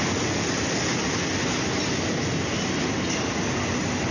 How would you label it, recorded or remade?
recorded